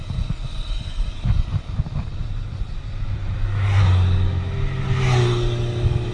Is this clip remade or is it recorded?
recorded